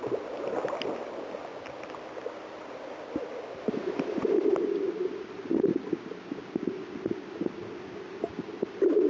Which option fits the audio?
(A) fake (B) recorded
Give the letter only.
B